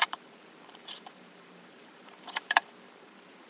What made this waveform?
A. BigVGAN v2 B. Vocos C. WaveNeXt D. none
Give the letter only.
A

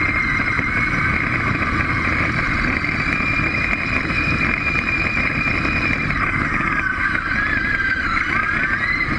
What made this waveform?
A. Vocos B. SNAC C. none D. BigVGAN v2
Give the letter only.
D